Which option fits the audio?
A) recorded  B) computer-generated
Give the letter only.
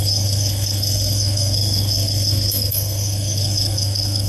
B